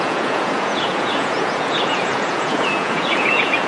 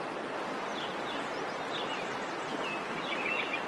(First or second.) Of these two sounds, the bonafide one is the second